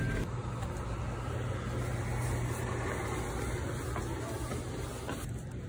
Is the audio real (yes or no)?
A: yes